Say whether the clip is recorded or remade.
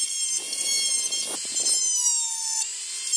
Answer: recorded